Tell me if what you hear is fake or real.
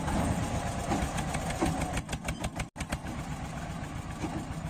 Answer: real